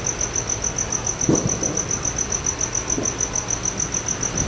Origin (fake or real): real